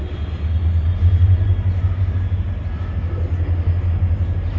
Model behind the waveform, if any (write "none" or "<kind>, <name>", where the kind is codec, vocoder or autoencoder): none